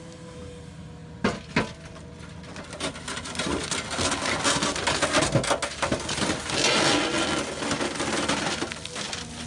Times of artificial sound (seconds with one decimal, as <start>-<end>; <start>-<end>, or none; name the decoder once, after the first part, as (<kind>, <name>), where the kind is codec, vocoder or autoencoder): none